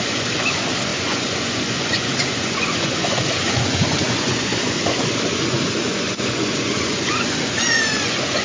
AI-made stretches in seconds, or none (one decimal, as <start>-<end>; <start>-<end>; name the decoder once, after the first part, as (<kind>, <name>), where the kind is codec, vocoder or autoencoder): 0.0-8.4 (vocoder, Vocos)